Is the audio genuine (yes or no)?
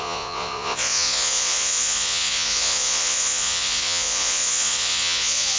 no